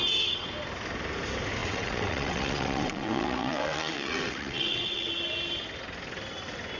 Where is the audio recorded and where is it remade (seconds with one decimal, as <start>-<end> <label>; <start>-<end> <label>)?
0.0-1.6 recorded; 1.6-5.1 remade; 5.1-6.8 recorded